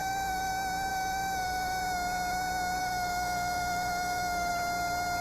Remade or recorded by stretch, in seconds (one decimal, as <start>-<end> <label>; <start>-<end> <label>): 0.0-0.5 remade; 0.5-0.9 recorded; 0.9-1.8 remade; 1.8-2.8 recorded; 2.8-4.5 remade; 4.5-5.2 recorded